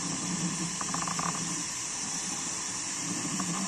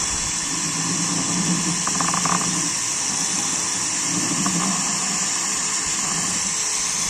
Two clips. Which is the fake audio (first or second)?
first